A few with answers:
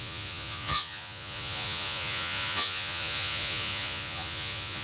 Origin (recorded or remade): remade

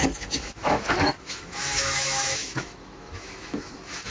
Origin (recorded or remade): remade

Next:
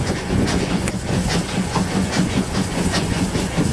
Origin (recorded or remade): remade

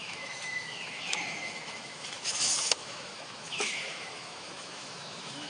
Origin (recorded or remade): remade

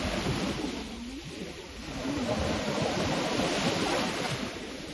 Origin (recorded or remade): recorded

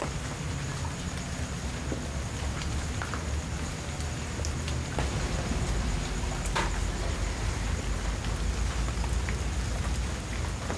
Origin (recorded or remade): recorded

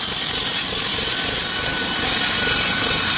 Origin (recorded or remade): recorded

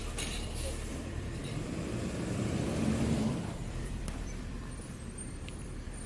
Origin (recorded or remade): remade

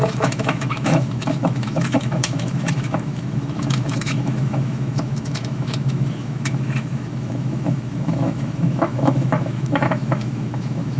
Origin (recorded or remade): remade